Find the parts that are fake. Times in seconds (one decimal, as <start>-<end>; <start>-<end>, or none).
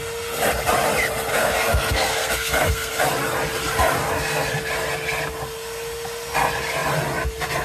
1.3-2.9